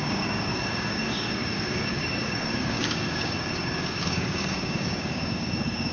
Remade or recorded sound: remade